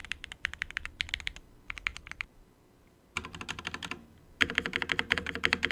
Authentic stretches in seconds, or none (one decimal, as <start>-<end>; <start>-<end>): 1.1-1.9; 3.6-5.7